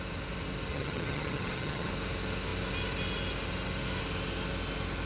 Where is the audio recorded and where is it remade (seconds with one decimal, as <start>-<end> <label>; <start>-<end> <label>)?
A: 0.0-0.7 recorded; 0.7-1.9 remade; 1.9-5.1 recorded